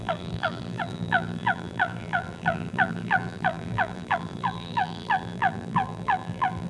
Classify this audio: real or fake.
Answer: fake